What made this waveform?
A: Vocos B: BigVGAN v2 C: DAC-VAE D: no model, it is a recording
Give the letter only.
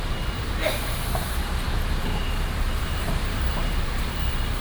B